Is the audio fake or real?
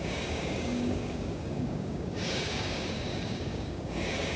fake